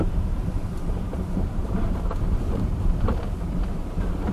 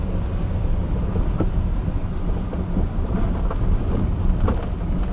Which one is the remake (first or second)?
first